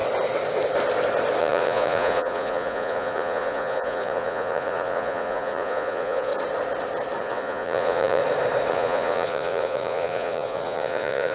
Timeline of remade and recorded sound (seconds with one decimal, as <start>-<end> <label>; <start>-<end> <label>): 0.0-1.4 recorded; 1.4-6.3 remade; 6.3-7.2 recorded; 7.2-8.2 remade; 8.2-8.7 recorded; 8.7-11.3 remade